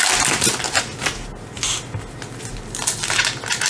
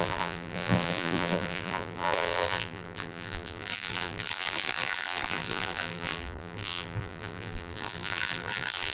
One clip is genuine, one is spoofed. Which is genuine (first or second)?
first